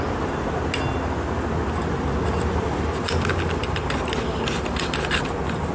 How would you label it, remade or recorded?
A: recorded